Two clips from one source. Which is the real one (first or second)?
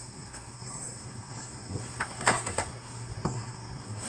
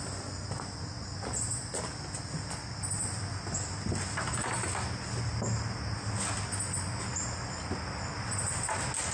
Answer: second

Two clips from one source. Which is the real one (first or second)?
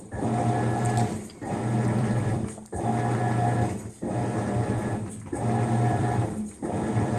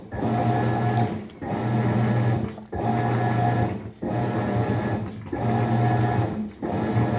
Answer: second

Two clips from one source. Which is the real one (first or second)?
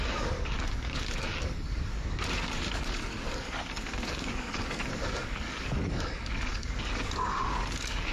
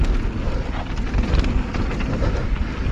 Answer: second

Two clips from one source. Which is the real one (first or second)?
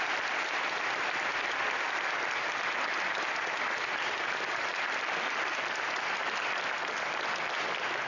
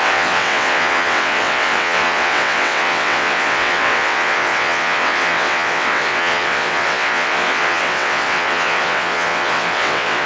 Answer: first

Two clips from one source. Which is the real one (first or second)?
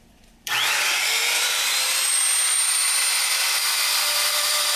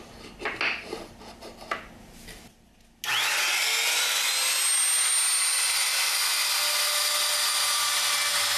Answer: second